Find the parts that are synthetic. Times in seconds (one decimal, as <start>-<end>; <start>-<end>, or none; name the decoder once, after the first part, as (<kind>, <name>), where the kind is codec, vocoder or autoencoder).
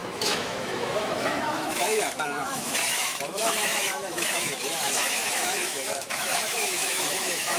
0.0-7.6 (autoencoder, DAC-VAE)